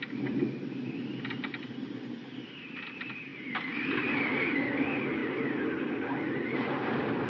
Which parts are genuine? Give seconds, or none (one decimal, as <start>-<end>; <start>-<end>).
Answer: 0.0-7.3